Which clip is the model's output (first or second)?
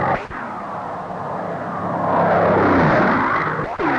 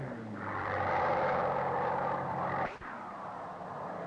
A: second